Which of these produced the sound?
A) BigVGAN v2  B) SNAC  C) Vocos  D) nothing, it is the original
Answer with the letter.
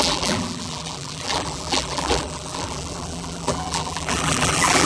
A